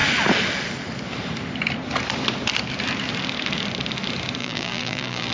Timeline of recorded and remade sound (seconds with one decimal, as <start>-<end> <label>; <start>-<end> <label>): 0.0-4.4 recorded; 4.4-5.3 remade